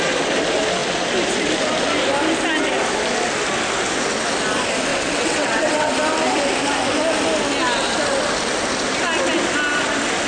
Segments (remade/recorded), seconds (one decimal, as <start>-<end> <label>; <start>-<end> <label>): 0.0-4.9 recorded; 4.9-5.9 remade; 5.9-10.3 recorded